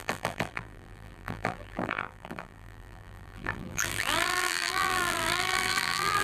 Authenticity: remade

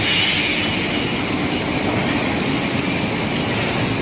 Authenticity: recorded